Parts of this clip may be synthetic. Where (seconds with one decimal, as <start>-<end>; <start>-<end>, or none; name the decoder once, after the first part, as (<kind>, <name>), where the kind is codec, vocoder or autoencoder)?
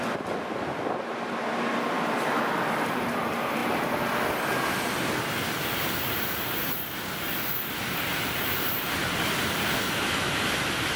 none